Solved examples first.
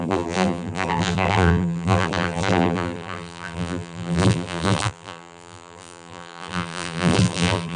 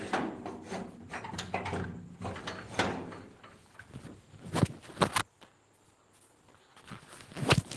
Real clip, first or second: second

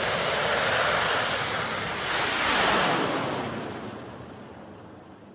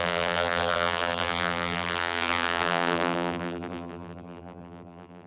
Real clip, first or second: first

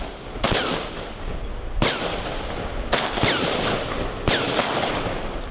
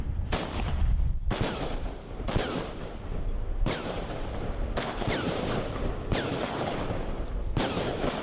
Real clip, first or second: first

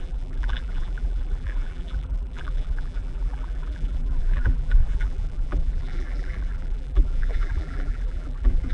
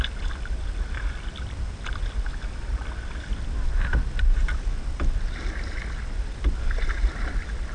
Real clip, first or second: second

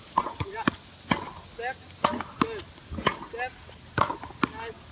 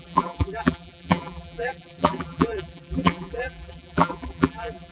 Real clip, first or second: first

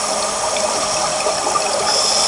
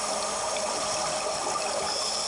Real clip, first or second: second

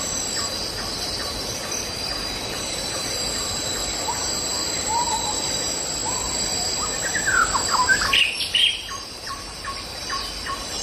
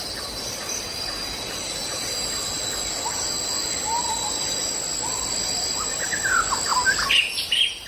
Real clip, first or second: second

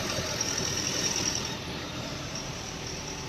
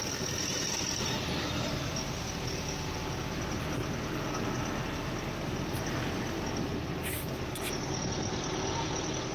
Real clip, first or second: second